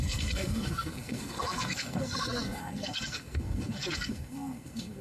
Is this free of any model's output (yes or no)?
no